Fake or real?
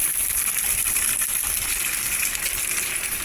real